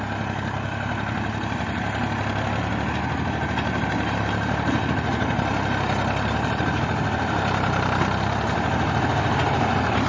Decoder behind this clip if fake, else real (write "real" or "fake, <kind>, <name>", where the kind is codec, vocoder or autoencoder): real